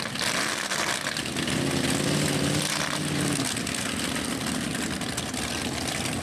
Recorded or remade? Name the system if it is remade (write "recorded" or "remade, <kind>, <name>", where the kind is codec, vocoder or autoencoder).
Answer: recorded